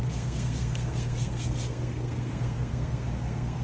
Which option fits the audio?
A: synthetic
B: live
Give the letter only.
A